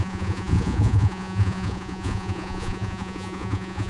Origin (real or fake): fake